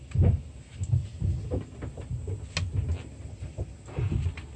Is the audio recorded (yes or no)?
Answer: yes